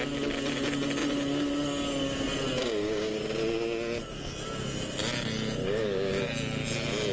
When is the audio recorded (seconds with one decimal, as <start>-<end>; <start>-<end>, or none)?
0.0-2.6; 3.2-5.6; 6.2-7.1